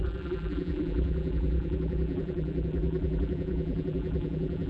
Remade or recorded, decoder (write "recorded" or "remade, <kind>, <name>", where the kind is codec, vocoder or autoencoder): remade, vocoder, BigVGAN v2